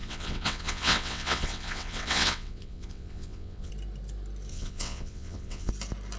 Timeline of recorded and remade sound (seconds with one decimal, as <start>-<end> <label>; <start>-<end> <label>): 0.0-3.7 remade; 3.7-4.5 recorded; 4.5-5.7 remade; 5.7-6.2 recorded